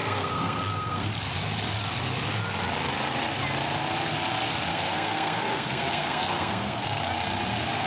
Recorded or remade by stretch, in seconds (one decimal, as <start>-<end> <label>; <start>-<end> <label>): 0.0-1.1 remade; 1.1-4.7 recorded; 4.7-7.0 remade; 7.0-7.9 recorded